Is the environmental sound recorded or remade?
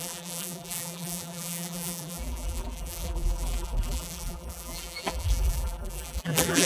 remade